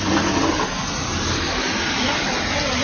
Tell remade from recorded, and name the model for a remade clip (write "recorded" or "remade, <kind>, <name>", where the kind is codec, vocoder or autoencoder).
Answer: recorded